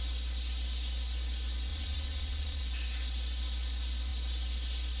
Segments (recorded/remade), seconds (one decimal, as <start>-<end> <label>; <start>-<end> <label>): 0.0-1.7 recorded; 1.7-2.6 remade; 2.6-5.0 recorded